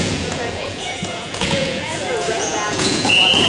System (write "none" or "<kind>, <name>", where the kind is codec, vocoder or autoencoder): vocoder, Vocos